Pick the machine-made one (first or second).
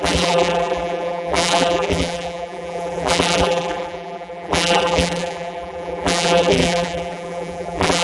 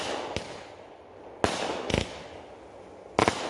first